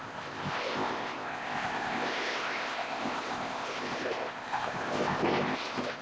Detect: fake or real fake